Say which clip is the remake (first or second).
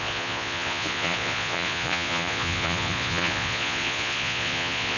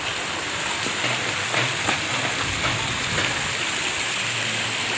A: first